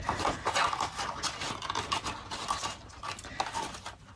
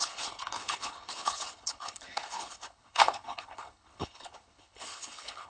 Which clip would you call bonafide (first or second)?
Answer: first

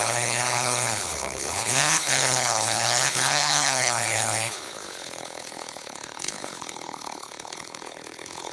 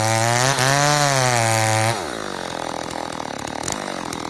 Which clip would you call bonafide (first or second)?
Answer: second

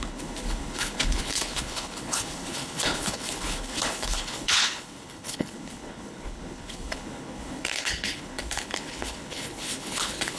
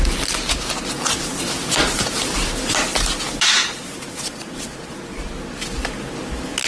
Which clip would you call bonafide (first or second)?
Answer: second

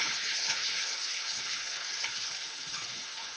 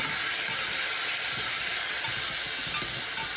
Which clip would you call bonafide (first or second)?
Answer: second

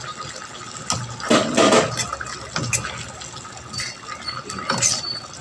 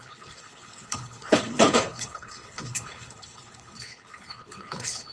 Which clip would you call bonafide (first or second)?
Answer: first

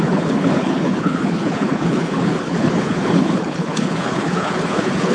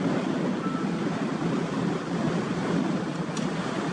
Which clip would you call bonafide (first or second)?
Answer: second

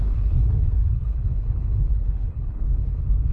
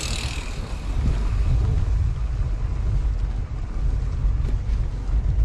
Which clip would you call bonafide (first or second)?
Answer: second